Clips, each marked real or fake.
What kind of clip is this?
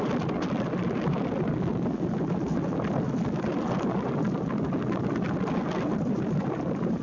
real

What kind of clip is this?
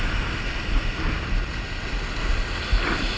real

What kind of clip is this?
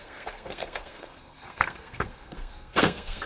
fake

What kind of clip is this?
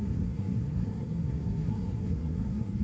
fake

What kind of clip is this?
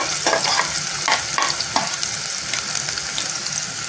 real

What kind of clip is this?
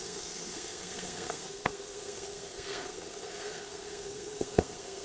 fake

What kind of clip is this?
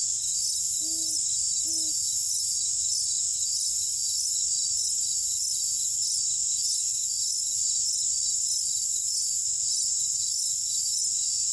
real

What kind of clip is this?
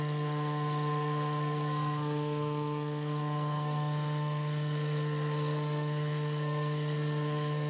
fake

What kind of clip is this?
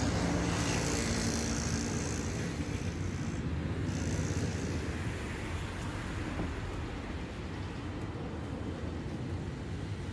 real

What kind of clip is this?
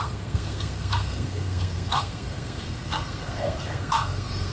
fake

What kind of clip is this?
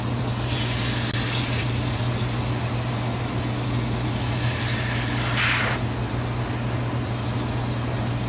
real